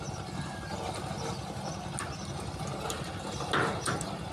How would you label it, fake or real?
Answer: real